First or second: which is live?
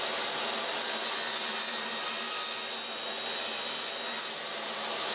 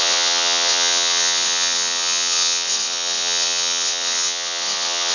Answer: first